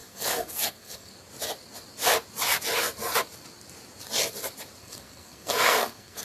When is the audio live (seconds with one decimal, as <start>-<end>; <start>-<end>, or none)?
1.1-4.8

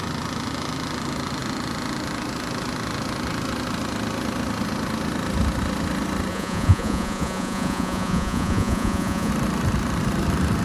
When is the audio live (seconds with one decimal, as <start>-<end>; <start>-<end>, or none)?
0.0-6.3; 9.3-10.6